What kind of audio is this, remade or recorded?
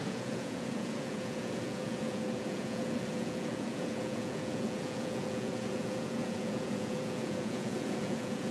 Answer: remade